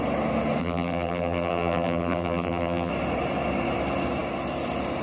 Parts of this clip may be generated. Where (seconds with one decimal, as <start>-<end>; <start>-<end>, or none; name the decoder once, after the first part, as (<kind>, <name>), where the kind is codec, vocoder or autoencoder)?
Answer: 0.6-2.9 (vocoder, BigVGAN v2)